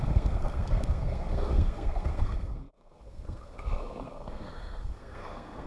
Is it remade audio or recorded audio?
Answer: remade